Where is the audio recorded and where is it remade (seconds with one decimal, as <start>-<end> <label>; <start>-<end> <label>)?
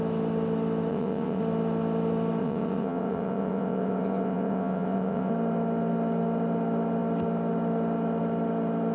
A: 0.0-0.9 recorded; 0.9-1.4 remade; 1.4-2.4 recorded; 2.4-5.3 remade; 5.3-8.9 recorded